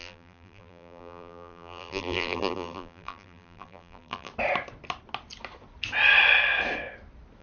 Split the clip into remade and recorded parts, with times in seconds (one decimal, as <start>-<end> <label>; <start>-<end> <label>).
0.0-4.3 remade; 4.3-7.4 recorded